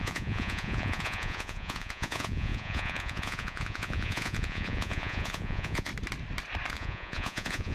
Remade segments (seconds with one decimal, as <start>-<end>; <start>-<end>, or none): 0.0-5.9; 6.7-7.7